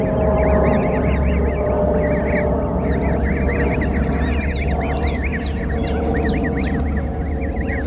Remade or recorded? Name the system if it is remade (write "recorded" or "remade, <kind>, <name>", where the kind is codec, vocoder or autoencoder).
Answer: recorded